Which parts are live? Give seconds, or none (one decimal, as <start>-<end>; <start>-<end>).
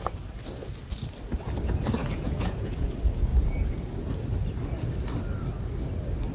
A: 0.0-2.0; 2.9-3.3; 4.1-6.3